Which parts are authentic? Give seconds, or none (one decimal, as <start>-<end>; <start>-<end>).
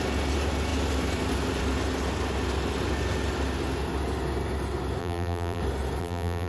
0.0-5.0; 5.6-6.0